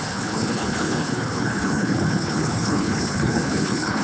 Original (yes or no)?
no